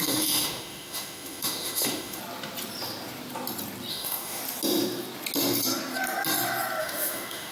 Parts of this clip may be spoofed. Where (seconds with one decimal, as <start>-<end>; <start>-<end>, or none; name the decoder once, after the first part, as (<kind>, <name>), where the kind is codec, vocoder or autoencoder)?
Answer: 0.0-2.2 (autoencoder, DAC-VAE); 3.9-4.4; 6.8-7.5